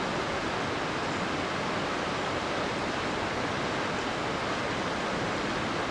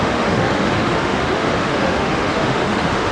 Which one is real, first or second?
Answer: first